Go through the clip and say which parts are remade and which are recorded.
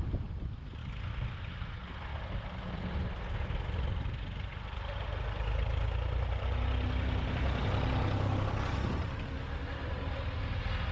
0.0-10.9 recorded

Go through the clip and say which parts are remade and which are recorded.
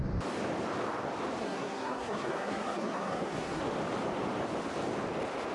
0.0-1.4 recorded; 1.4-3.6 remade; 3.6-5.5 recorded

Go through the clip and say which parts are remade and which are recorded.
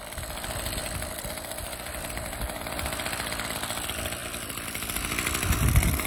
0.0-6.1 recorded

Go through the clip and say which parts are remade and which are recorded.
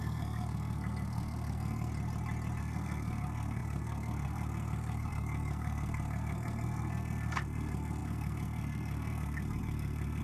0.0-1.9 remade; 1.9-2.6 recorded; 2.6-10.2 remade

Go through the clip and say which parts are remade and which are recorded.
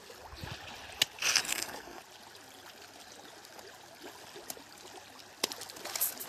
0.0-1.5 recorded; 1.5-2.0 remade; 2.0-6.3 recorded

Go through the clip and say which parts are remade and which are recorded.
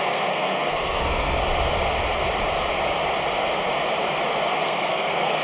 0.0-1.4 remade; 1.4-4.6 recorded; 4.6-5.4 remade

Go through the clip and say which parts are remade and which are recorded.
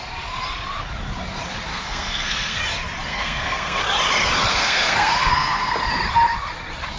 0.0-1.7 recorded; 1.7-2.6 remade; 2.6-3.1 recorded; 3.1-3.8 remade; 3.8-4.5 recorded; 4.5-5.7 remade; 5.7-7.0 recorded